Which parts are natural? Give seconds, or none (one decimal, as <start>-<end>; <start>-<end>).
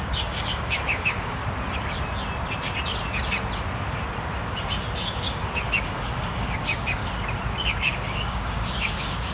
1.4-5.8; 7.0-7.6